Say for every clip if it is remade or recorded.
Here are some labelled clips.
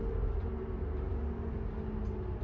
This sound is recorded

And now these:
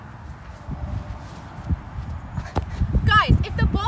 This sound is recorded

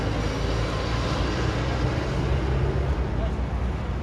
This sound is recorded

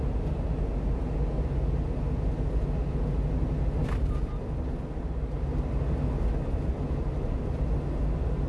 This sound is recorded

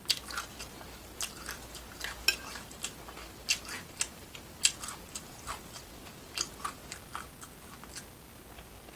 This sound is recorded